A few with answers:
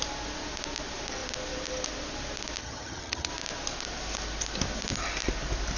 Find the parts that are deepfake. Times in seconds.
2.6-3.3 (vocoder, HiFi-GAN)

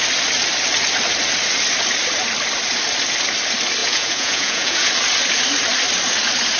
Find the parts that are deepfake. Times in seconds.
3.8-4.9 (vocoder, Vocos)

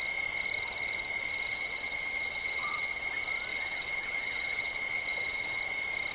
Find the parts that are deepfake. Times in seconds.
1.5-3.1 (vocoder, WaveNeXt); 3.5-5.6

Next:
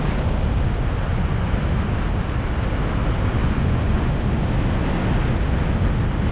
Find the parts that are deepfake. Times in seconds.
1.1-1.6 (vocoder, Vocos); 3.4-4.1

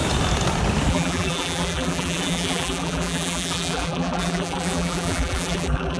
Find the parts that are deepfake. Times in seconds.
0.9-6.0 (vocoder, BigVGAN v2)